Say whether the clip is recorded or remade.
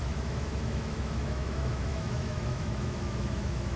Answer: remade